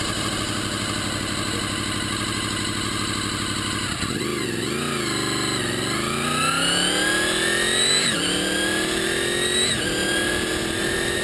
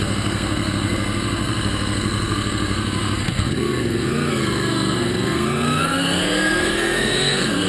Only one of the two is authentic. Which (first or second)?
first